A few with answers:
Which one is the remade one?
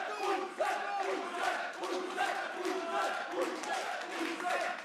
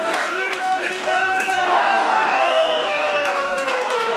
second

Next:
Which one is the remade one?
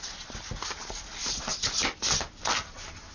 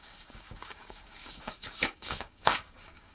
second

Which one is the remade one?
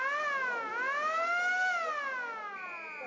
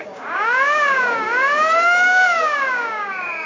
second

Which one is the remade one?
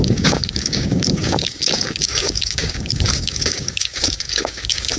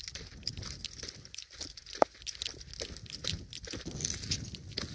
first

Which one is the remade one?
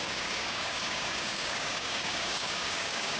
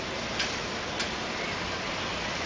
first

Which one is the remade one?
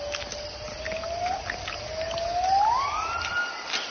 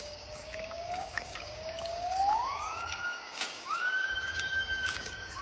second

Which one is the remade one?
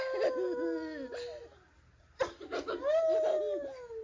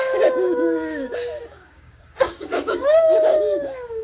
second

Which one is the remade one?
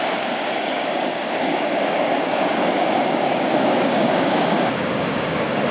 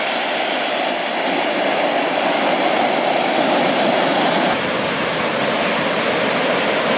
first